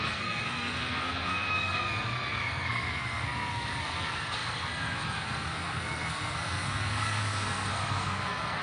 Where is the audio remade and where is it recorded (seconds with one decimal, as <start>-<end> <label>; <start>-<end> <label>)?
0.0-8.6 remade